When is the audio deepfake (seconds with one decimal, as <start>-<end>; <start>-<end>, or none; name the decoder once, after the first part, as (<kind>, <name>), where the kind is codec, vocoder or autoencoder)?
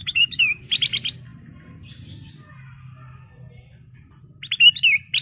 0.0-0.7 (codec, DAC)